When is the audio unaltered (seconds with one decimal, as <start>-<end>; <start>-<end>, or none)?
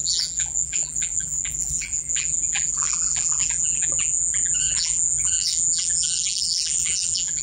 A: none